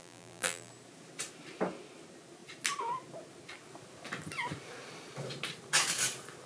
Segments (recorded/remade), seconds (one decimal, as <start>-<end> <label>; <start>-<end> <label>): 0.0-0.7 remade; 0.7-6.5 recorded